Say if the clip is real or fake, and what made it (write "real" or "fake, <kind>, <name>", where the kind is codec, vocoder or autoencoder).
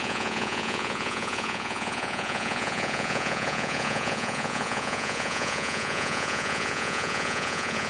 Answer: fake, vocoder, Vocos